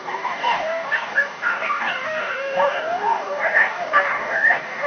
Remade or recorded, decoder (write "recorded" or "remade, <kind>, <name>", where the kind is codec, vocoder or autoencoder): remade, codec, DAC